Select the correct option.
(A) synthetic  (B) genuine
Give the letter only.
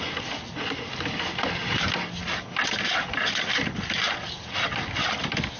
B